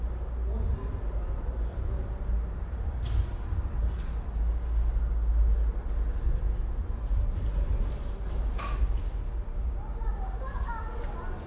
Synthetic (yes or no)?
no